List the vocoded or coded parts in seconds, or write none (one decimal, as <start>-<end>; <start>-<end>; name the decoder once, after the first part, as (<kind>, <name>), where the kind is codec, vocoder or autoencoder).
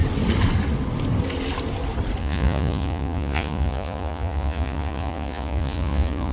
2.2-6.3 (vocoder, Vocos)